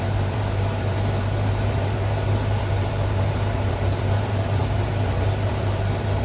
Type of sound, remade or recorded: remade